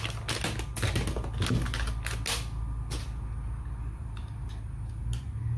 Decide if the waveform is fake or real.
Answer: real